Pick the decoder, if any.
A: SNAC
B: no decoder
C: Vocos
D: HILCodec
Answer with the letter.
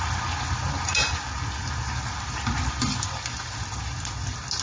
B